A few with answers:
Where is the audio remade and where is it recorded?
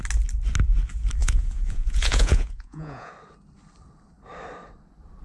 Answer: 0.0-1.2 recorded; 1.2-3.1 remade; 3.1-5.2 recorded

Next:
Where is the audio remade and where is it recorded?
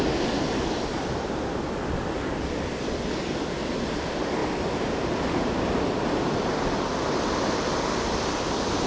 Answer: 0.0-8.9 recorded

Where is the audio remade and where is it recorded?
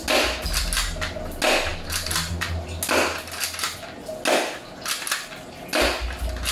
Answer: 0.0-6.5 recorded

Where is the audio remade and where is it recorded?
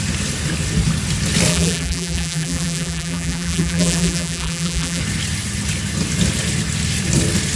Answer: 0.0-1.5 recorded; 1.5-5.0 remade; 5.0-7.6 recorded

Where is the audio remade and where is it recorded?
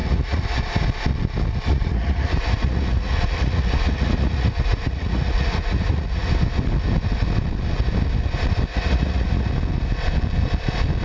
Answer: 0.0-0.6 remade; 0.6-1.7 recorded; 1.7-6.3 remade; 6.3-8.7 recorded; 8.7-9.5 remade; 9.5-11.0 recorded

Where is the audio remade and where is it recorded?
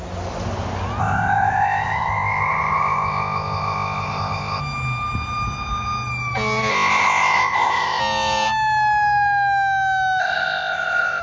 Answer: 0.0-1.0 recorded; 1.0-4.6 remade; 4.6-6.7 recorded; 6.7-8.0 remade; 8.0-10.2 recorded; 10.2-11.2 remade